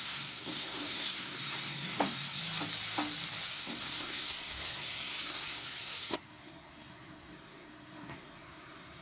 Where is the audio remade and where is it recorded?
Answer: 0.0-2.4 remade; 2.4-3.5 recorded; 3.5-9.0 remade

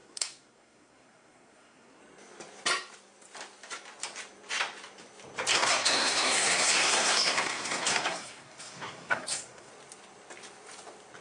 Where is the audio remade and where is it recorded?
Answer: 0.0-2.0 remade; 2.0-5.5 recorded; 5.5-9.7 remade; 9.7-11.2 recorded

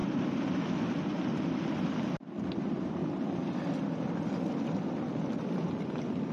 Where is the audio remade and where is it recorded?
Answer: 0.0-6.3 recorded

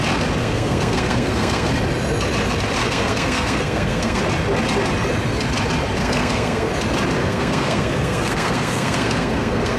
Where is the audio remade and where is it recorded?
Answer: 0.0-0.4 recorded; 0.4-1.7 remade; 1.7-2.8 recorded; 2.8-4.2 remade; 4.2-6.0 recorded; 6.0-6.7 remade; 6.7-7.2 recorded; 7.2-9.8 remade

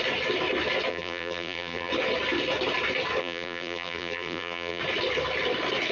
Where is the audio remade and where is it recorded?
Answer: 0.0-0.9 recorded; 0.9-1.9 remade; 1.9-3.2 recorded; 3.2-4.8 remade; 4.8-5.9 recorded

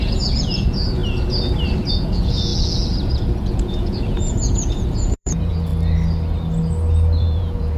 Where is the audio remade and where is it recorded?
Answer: 0.0-1.0 remade; 1.0-1.9 recorded; 1.9-2.5 remade; 2.5-3.5 recorded; 3.5-5.7 remade; 5.7-7.2 recorded; 7.2-7.8 remade

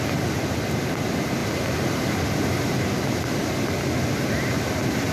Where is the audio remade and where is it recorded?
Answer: 0.0-5.1 recorded